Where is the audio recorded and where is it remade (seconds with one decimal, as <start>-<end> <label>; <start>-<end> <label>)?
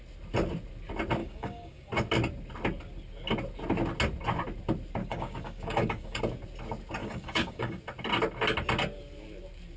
0.0-1.2 recorded; 1.2-1.9 remade; 1.9-5.0 recorded; 5.0-6.2 remade; 6.2-7.0 recorded; 7.0-7.8 remade; 7.8-9.8 recorded